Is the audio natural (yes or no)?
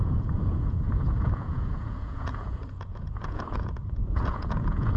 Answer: no